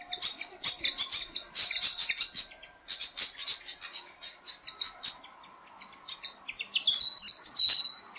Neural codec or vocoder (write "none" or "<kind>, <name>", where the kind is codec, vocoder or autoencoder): none